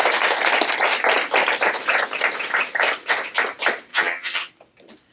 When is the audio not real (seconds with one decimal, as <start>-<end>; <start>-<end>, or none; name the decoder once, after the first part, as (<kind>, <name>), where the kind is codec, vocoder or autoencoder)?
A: 3.9-4.5 (vocoder, HiFi-GAN)

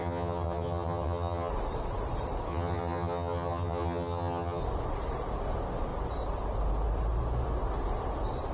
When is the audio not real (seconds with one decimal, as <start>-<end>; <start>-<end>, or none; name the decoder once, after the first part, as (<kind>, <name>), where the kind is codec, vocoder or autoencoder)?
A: 0.0-1.5 (vocoder, HiFi-GAN); 2.5-4.6

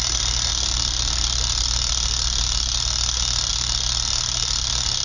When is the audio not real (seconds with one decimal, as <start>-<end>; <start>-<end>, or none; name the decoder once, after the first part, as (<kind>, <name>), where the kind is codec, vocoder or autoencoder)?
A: none

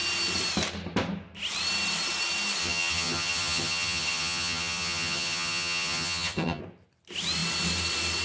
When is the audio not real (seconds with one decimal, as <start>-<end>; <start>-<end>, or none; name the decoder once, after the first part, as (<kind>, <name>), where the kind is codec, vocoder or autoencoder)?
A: 2.6-6.6 (vocoder, HiFi-GAN)

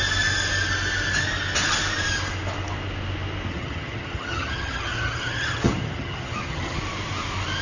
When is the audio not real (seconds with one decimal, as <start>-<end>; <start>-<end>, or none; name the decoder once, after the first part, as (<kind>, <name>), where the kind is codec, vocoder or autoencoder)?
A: 3.5-6.8 (vocoder, HiFi-GAN)

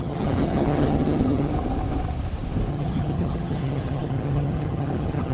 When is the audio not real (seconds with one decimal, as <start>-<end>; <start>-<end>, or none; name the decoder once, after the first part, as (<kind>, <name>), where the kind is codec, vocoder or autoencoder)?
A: 0.0-1.5 (vocoder, HiFi-GAN); 2.7-5.3

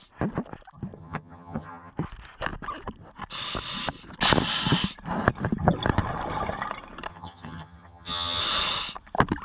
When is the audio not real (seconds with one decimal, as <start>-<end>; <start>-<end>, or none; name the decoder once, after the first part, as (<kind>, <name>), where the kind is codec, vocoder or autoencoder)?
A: 1.0-1.9 (vocoder, HiFi-GAN); 7.1-8.4